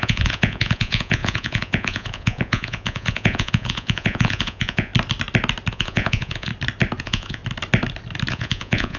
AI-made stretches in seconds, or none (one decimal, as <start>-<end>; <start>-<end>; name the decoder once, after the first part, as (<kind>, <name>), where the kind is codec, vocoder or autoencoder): 0.0-4.9 (vocoder, Vocos); 5.7-6.5; 7.0-7.4; 8.3-9.0